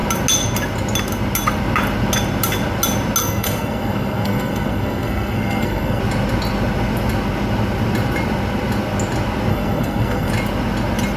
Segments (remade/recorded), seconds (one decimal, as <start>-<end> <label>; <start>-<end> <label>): 0.0-3.2 recorded; 3.2-6.0 remade; 6.0-9.5 recorded; 9.5-10.3 remade; 10.3-11.2 recorded